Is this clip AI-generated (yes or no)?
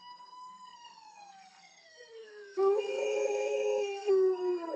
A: yes